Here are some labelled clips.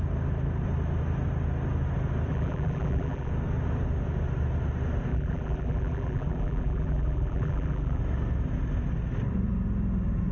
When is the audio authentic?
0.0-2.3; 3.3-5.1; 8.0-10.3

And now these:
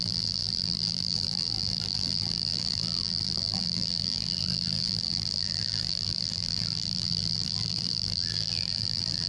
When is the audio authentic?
none

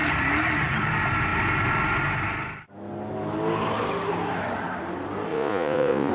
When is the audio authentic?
0.0-5.3

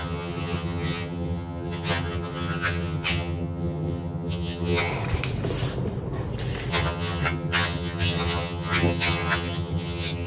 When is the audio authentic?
4.9-6.7

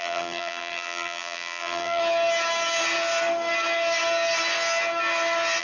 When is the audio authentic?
2.0-5.6

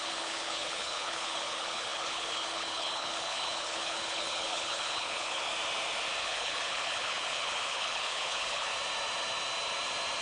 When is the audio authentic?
5.5-6.2; 8.7-10.2